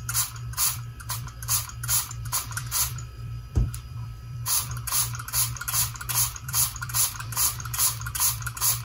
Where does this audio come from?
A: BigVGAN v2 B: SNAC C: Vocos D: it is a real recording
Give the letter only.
A